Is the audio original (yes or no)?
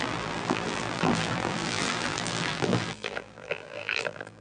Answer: no